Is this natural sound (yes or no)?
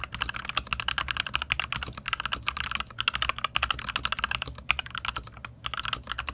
yes